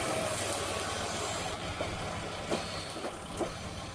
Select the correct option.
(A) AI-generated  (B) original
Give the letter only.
B